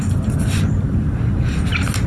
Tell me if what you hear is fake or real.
real